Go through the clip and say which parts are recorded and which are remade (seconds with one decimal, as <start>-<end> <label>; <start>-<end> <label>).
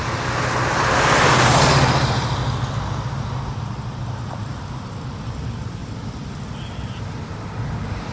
0.0-1.9 recorded; 1.9-2.4 remade; 2.4-3.6 recorded; 3.6-5.8 remade; 5.8-6.7 recorded; 6.7-8.1 remade